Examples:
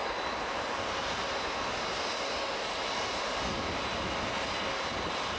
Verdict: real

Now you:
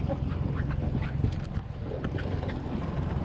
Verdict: real